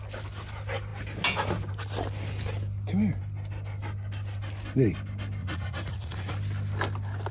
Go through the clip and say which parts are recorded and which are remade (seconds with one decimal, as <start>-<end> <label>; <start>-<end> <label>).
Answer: 0.0-5.4 recorded; 5.4-6.3 remade; 6.3-7.3 recorded